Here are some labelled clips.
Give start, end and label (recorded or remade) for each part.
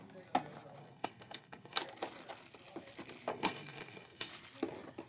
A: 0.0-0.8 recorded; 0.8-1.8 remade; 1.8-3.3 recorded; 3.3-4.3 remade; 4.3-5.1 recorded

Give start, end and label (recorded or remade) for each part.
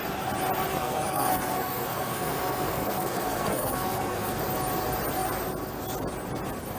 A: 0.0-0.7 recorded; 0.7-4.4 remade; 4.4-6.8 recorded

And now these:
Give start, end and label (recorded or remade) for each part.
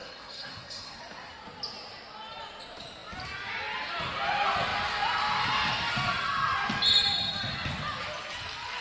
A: 0.0-1.0 remade; 1.0-8.8 recorded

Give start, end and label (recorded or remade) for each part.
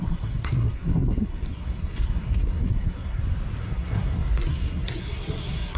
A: 0.0-3.2 remade; 3.2-3.6 recorded; 3.6-5.8 remade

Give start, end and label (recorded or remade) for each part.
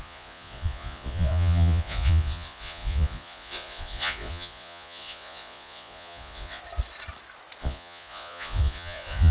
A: 0.0-6.6 remade; 6.6-7.6 recorded; 7.6-9.3 remade